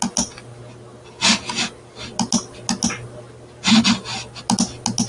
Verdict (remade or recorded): recorded